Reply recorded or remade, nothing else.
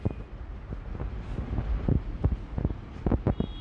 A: recorded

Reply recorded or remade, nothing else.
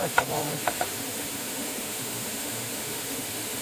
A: remade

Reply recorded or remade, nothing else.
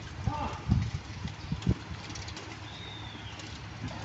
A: recorded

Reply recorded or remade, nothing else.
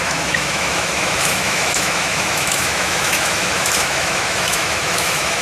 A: remade